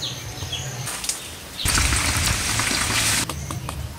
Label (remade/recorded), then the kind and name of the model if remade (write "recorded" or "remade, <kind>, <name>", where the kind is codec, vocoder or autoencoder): recorded